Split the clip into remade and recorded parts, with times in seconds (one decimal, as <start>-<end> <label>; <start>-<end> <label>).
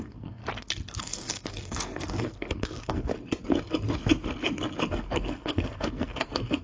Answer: 0.0-0.4 remade; 0.4-1.0 recorded; 1.0-3.1 remade; 3.1-4.9 recorded; 4.9-6.6 remade